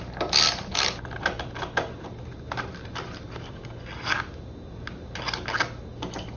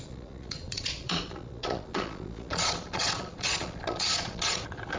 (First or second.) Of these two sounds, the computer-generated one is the second